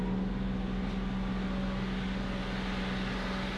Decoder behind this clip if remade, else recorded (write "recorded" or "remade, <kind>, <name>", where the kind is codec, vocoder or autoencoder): recorded